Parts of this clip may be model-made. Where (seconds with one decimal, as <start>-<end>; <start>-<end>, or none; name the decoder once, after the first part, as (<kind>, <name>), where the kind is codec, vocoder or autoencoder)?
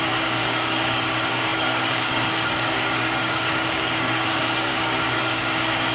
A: 0.0-5.9 (codec, DAC)